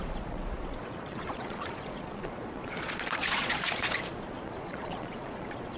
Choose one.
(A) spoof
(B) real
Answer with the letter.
A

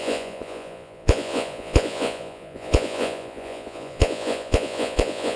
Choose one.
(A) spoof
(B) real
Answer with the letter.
A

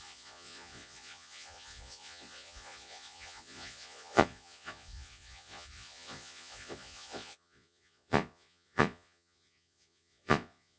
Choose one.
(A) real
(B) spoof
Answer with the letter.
B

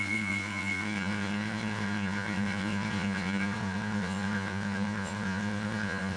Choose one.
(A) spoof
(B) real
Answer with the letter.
A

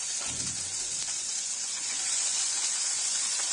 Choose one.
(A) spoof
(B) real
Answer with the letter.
A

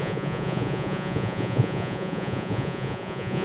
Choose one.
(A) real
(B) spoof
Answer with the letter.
B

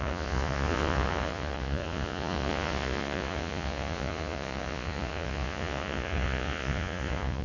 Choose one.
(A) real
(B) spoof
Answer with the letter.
B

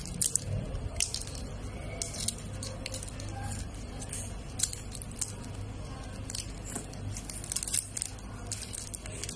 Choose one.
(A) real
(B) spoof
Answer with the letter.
A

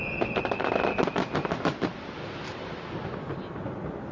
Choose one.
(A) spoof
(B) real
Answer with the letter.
B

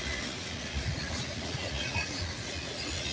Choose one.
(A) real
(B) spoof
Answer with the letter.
B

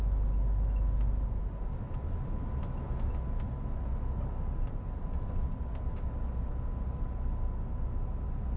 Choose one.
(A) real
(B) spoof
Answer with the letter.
A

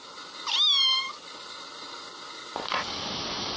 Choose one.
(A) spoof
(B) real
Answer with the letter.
B